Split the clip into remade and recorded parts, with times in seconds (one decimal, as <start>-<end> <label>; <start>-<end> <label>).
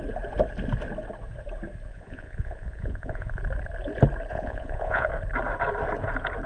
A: 0.0-1.9 recorded; 1.9-3.4 remade; 3.4-4.3 recorded; 4.3-5.1 remade; 5.1-6.5 recorded